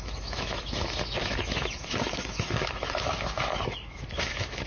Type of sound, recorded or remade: remade